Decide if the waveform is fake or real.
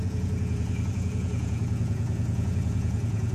fake